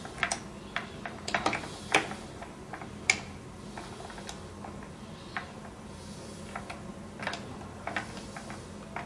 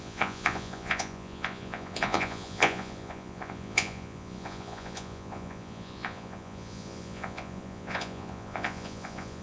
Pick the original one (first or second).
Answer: first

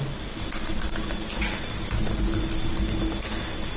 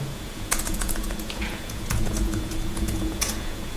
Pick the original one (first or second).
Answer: first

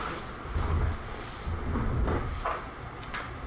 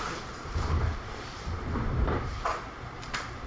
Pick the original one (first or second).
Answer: first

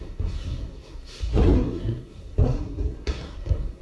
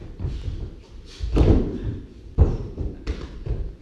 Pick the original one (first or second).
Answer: second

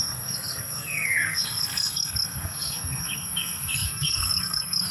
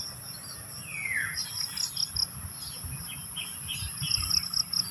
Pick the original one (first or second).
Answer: second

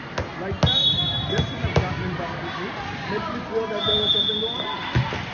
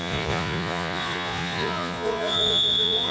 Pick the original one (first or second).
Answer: first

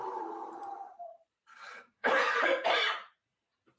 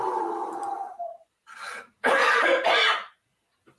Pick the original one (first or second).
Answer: second